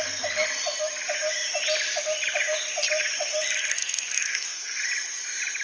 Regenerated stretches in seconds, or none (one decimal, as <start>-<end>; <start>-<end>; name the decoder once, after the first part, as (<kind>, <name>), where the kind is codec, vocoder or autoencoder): 3.7-4.8 (codec, SNAC)